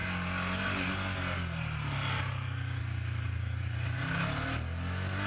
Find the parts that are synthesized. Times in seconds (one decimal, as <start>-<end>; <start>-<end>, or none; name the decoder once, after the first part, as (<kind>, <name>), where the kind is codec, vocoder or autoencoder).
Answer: none